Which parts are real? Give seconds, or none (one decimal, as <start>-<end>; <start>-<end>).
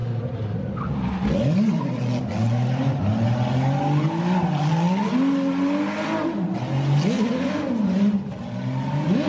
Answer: 0.0-9.3